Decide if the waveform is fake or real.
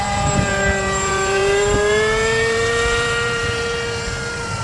fake